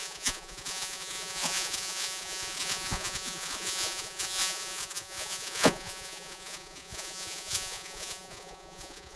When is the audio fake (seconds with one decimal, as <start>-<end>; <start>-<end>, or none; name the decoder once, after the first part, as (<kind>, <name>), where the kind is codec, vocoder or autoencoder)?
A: 0.0-9.2 (vocoder, Vocos)